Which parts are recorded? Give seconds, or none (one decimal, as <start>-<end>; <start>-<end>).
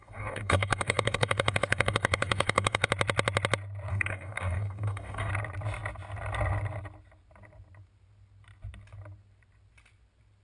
2.9-3.9; 5.3-10.4